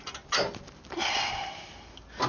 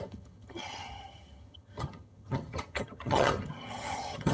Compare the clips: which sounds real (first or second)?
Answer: first